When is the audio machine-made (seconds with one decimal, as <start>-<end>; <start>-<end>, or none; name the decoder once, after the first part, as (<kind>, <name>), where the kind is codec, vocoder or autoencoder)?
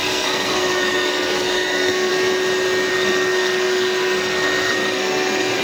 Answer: 0.0-2.1 (codec, SNAC); 2.9-5.6